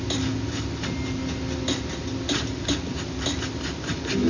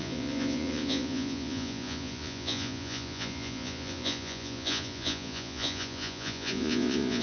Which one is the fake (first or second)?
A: second